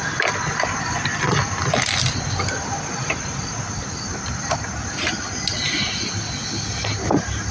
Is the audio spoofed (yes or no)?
no